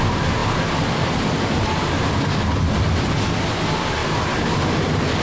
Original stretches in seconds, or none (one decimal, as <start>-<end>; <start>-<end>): 0.0-5.2